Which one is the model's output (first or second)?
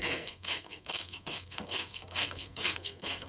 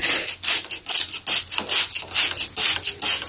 first